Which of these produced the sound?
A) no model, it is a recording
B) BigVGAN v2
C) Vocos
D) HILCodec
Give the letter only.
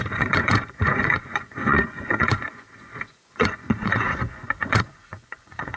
C